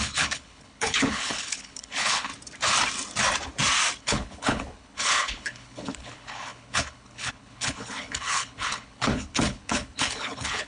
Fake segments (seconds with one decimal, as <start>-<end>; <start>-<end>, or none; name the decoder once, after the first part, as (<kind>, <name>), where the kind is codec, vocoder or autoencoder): 0.0-2.3 (codec, HILCodec); 4.0-10.7